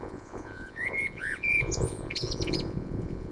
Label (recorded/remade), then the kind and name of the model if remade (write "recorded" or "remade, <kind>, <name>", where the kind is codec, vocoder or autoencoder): remade, vocoder, Vocos